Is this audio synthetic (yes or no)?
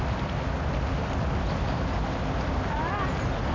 no